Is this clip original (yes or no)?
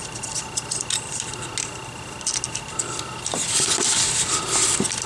yes